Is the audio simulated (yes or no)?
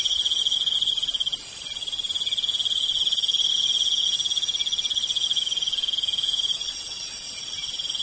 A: no